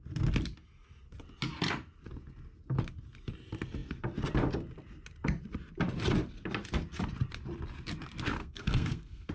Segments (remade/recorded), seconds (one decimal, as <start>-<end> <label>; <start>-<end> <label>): 0.0-8.4 recorded; 8.4-9.3 remade